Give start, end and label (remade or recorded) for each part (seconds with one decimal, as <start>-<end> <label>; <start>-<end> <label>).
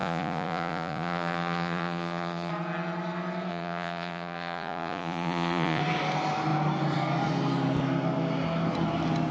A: 0.0-2.5 remade; 2.5-3.5 recorded; 3.5-5.8 remade; 5.8-9.3 recorded